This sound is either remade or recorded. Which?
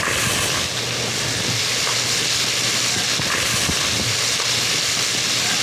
recorded